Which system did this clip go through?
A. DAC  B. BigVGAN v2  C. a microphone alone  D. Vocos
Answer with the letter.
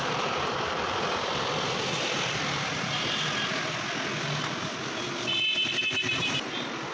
C